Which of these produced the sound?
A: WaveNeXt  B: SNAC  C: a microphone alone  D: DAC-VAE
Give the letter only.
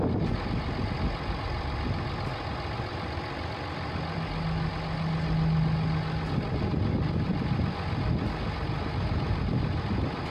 C